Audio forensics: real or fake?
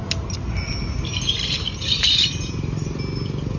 real